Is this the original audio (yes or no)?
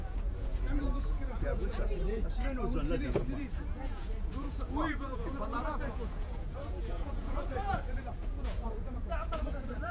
no